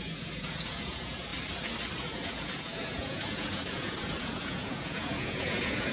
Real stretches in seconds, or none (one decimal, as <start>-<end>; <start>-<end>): 1.3-2.0